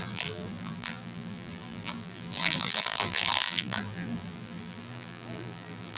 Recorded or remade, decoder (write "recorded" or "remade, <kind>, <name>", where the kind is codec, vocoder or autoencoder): remade, vocoder, BigVGAN v2